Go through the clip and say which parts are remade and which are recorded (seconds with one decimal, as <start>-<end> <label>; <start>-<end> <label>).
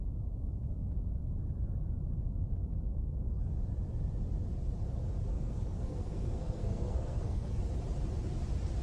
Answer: 0.0-2.9 recorded; 2.9-3.4 remade; 3.4-5.3 recorded; 5.3-7.6 remade; 7.6-8.8 recorded